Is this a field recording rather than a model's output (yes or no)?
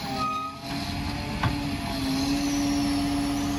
yes